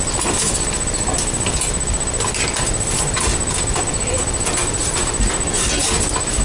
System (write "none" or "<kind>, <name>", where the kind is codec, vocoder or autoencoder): none